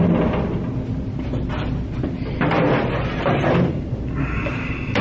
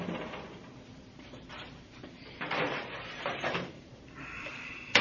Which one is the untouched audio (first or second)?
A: first